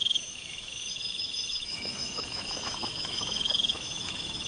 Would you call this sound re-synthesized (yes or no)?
yes